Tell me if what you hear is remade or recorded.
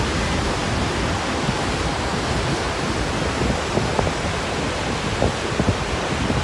recorded